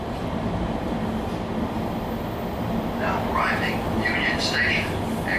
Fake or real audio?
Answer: real